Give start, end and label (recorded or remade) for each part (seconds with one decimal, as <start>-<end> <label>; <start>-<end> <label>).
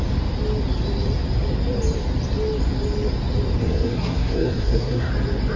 0.0-3.6 recorded; 3.6-5.1 remade; 5.1-5.6 recorded